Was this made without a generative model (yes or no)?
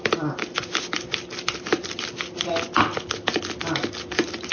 yes